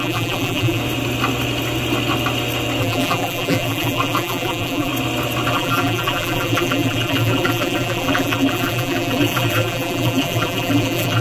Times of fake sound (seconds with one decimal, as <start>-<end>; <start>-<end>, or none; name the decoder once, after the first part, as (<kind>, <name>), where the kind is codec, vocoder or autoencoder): 0.0-0.8 (vocoder, BigVGAN v2); 2.8-4.9; 5.5-11.2